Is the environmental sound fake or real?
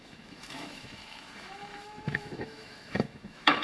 fake